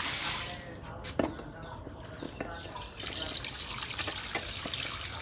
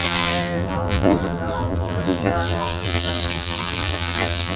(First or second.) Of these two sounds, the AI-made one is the second